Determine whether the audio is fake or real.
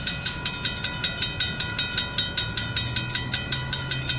real